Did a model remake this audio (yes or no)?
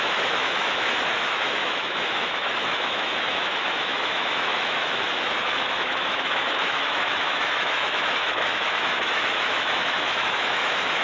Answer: yes